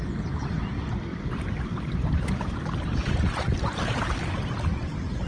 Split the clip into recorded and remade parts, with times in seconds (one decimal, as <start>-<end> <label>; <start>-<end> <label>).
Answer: 0.0-1.1 recorded; 1.1-4.0 remade; 4.0-5.3 recorded